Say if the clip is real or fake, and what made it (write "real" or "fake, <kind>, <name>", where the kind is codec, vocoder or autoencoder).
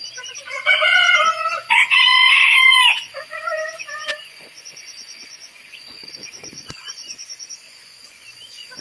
fake, vocoder, Vocos